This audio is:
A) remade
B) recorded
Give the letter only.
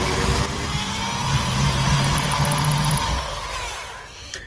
B